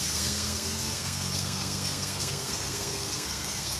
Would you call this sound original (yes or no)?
no